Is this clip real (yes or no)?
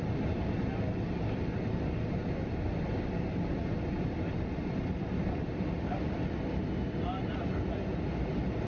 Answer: yes